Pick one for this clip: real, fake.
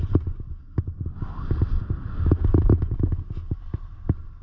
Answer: real